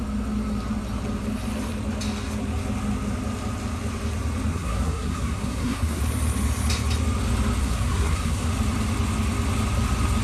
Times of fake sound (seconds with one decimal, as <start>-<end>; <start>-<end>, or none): 4.5-6.0; 7.6-8.5